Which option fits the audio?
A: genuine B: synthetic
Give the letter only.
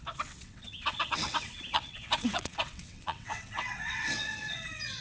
B